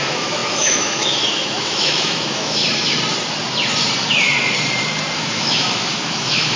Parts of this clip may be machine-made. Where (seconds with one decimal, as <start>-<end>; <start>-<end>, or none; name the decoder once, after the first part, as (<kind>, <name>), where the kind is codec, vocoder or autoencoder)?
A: 0.0-2.6 (autoencoder, DAC-VAE); 5.2-6.6

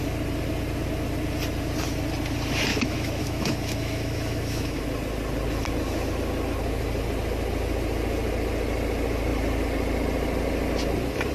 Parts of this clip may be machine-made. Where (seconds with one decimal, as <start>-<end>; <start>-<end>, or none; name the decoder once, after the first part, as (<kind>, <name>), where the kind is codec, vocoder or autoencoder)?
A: 2.7-4.8 (autoencoder, DAC-VAE)

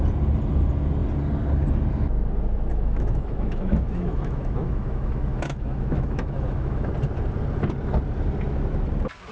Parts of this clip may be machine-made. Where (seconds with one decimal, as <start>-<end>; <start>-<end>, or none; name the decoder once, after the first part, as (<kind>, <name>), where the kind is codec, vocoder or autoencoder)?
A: 2.7-6.9 (autoencoder, DAC-VAE)

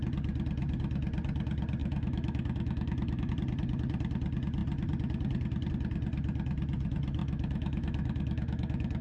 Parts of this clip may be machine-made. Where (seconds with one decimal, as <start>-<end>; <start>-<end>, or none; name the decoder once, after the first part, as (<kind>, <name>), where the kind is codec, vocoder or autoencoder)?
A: 1.8-3.3 (autoencoder, DAC-VAE); 7.2-9.0

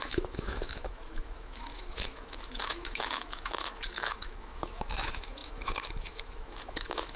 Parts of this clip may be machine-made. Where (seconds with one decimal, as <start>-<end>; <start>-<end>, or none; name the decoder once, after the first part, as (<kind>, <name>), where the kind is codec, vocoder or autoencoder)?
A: 0.0-7.2 (autoencoder, DAC-VAE)

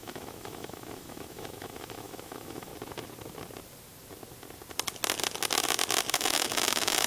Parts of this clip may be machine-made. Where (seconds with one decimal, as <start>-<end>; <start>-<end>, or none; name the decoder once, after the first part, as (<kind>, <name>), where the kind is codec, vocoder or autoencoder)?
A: 0.0-2.7 (autoencoder, DAC-VAE); 6.1-7.1

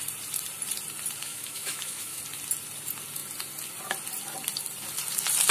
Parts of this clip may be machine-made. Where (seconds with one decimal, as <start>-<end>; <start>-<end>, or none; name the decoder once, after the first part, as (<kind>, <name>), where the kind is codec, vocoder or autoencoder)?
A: 1.2-2.2 (autoencoder, DAC-VAE)

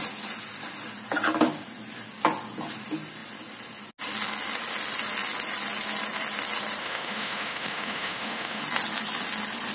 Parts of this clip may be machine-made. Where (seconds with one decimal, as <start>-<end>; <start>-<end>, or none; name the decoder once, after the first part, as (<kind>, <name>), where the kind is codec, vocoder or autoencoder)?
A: 6.8-8.6 (autoencoder, DAC-VAE)